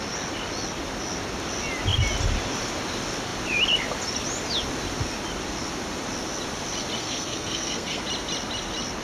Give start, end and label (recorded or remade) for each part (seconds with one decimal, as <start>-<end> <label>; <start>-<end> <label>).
0.0-7.0 recorded; 7.0-8.0 remade; 8.0-9.0 recorded